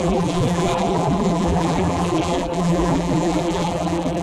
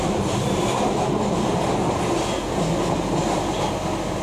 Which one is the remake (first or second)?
first